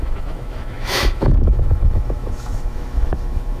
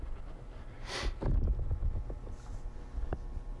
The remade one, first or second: first